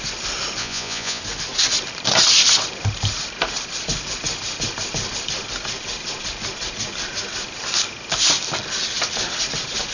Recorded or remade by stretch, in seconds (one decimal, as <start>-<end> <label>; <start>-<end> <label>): 0.0-0.6 recorded; 0.6-1.2 remade; 1.2-9.9 recorded